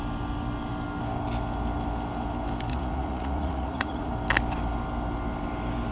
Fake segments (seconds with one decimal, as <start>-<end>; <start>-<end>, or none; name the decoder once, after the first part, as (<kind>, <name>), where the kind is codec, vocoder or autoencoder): 2.7-4.1 (vocoder, Vocos)